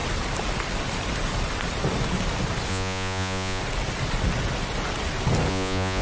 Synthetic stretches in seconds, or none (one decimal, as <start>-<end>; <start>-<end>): 2.7-3.6; 5.5-6.0